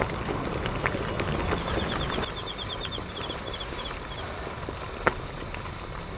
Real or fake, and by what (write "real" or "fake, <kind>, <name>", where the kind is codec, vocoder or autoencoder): real